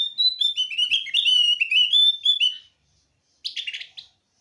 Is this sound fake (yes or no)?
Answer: no